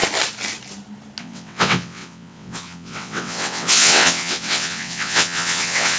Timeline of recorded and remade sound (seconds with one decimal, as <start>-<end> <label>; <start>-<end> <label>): 0.0-1.2 recorded; 1.2-6.0 remade